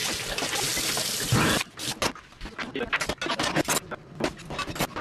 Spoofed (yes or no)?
no